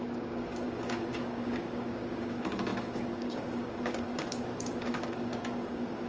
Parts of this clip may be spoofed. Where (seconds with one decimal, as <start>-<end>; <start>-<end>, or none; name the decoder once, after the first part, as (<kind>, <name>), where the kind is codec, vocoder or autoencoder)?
0.0-6.1 (codec, DAC)

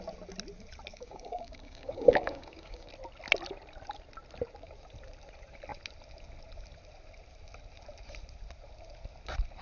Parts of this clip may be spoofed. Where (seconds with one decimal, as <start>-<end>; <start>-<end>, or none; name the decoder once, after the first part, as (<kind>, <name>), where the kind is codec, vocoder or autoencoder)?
0.9-2.9 (codec, DAC)

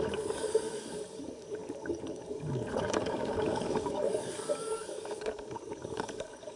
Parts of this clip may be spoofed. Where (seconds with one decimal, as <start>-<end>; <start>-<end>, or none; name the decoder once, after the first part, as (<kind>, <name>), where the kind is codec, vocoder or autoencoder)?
0.0-6.6 (codec, DAC)

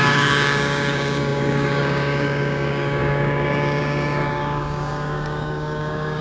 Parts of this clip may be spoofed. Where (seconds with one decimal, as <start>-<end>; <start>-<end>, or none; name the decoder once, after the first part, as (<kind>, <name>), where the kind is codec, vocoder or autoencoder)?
0.0-6.2 (codec, DAC)

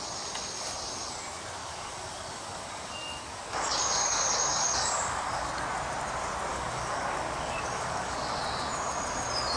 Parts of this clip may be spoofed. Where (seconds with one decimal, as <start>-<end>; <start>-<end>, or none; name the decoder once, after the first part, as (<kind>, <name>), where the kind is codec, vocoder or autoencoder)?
1.6-5.5 (codec, DAC); 6.5-8.4

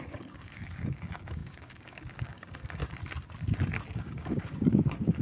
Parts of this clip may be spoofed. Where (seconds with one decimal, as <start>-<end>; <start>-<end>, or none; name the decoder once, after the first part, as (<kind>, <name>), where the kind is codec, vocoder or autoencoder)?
0.0-2.8 (codec, DAC); 3.9-5.2

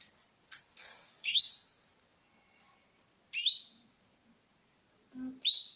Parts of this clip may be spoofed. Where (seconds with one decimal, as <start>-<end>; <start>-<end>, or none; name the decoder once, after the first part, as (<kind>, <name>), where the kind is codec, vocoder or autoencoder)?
0.9-1.5 (codec, DAC)

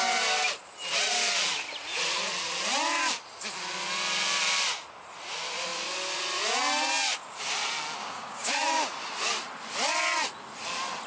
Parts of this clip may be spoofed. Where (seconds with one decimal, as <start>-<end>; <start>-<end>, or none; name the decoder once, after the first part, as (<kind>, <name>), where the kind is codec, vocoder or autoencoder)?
8.0-8.5 (codec, DAC)